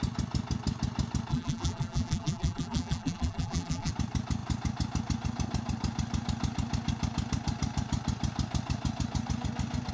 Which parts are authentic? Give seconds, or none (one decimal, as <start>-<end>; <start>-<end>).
0.0-1.3; 3.9-9.9